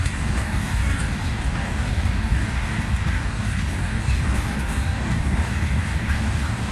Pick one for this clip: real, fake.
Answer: fake